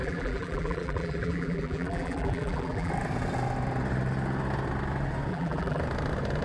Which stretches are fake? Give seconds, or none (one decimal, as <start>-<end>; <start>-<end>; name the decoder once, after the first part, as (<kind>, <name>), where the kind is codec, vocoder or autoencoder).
0.0-2.9 (vocoder, BigVGAN v2); 5.3-5.8